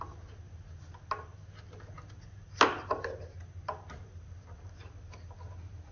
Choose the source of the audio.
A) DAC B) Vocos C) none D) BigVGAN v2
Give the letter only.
C